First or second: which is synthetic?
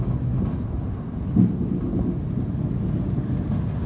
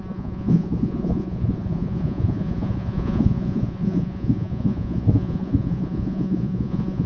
second